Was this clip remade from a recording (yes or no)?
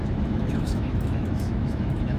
yes